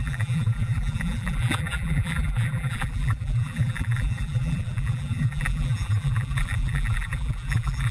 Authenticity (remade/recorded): remade